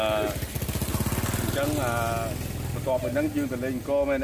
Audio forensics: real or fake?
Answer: real